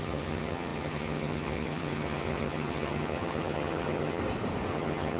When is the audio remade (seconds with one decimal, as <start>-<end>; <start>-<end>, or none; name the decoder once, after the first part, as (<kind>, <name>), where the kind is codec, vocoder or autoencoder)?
0.0-4.2 (vocoder, HiFi-GAN); 4.7-5.2